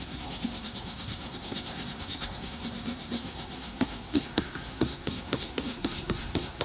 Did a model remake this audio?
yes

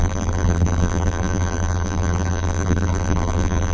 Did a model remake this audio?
yes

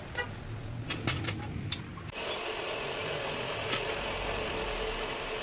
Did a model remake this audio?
no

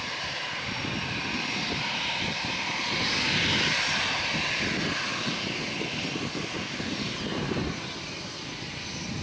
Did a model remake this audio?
no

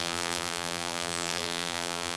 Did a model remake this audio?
yes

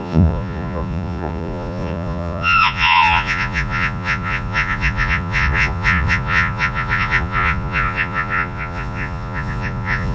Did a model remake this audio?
yes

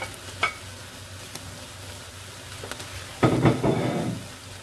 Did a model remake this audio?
no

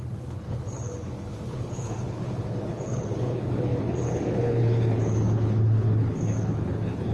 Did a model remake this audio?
yes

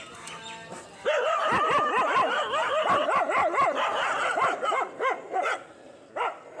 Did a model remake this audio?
no